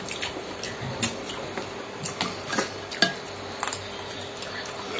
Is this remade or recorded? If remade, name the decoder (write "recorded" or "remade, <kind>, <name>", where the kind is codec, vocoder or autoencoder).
recorded